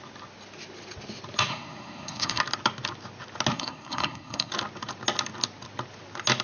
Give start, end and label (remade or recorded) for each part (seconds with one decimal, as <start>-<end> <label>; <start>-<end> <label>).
0.0-1.5 recorded; 1.5-2.4 remade; 2.4-3.5 recorded; 3.5-4.5 remade; 4.5-6.4 recorded